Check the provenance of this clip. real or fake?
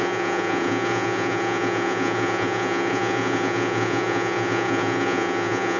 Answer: fake